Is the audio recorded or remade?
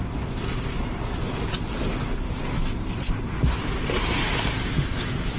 recorded